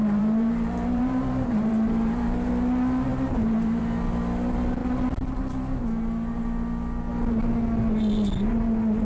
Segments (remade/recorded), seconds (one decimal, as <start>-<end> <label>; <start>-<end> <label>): 0.0-2.5 remade; 2.5-3.1 recorded; 3.1-3.8 remade; 3.8-9.0 recorded